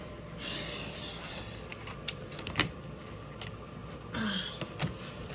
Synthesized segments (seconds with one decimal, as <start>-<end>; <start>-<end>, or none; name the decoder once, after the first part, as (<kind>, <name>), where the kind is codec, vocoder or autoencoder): 0.0-3.8 (vocoder, BigVGAN v2); 4.5-5.3